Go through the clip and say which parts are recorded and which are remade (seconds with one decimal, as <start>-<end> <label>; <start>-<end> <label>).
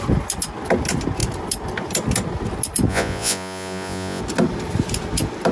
0.0-2.9 recorded; 2.9-4.2 remade; 4.2-5.5 recorded